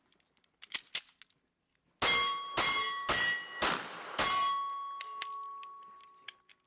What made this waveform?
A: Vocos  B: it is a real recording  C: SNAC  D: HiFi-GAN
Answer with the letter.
B